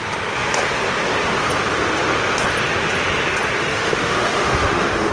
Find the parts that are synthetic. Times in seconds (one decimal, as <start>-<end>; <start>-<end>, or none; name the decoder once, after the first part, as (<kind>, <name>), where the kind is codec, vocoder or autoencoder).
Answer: 3.7-5.1 (autoencoder, DAC-VAE)